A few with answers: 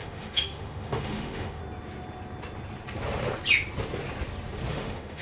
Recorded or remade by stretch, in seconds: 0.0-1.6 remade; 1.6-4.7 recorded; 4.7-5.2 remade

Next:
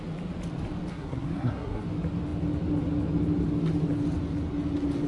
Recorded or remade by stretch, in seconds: 0.0-0.9 recorded; 0.9-1.8 remade; 1.8-5.1 recorded